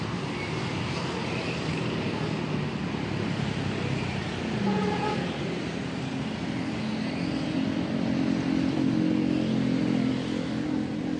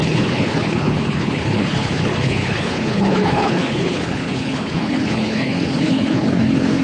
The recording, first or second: first